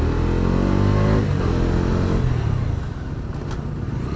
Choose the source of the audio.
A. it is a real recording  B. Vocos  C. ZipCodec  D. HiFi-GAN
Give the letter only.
A